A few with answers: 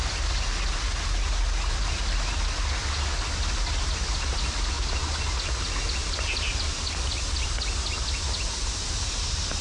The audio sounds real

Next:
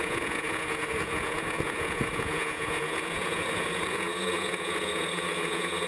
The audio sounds fake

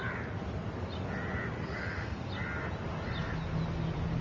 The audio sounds real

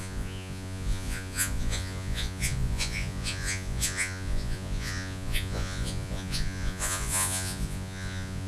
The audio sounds fake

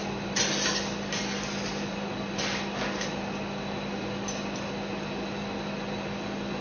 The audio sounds real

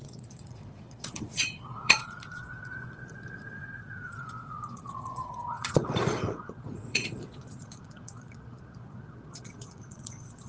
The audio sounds fake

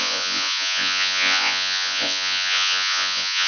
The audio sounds fake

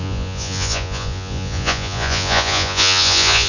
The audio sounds fake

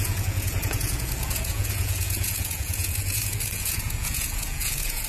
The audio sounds fake